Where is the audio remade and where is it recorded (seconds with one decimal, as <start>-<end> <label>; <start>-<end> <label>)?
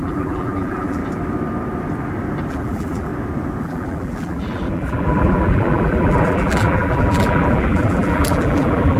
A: 0.0-1.0 remade; 1.0-2.5 recorded; 2.5-3.1 remade; 3.1-3.6 recorded; 3.6-9.0 remade